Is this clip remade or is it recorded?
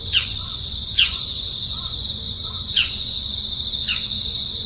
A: remade